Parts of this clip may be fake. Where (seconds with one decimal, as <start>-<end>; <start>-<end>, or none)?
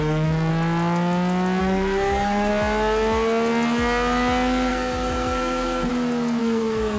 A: 0.0-0.5; 1.6-2.5; 4.7-5.9; 6.4-7.0